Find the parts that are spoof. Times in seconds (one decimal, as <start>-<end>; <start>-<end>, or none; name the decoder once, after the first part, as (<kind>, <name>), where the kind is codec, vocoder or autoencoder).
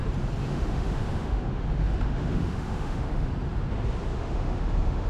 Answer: 0.5-3.3 (autoencoder, DAC-VAE); 4.1-5.1